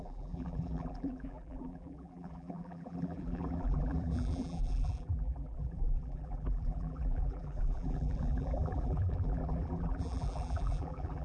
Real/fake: fake